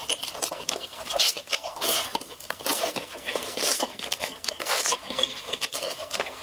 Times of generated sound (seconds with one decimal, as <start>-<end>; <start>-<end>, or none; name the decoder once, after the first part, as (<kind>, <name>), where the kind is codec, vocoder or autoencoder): 0.5-6.4 (codec, SNAC)